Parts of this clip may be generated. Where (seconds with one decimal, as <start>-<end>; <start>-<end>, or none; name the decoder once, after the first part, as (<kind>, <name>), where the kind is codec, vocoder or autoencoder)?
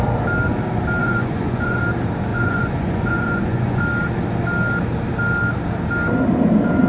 1.0-1.8 (vocoder, Vocos); 2.3-3.8